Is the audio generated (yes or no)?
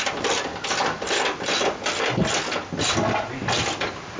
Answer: no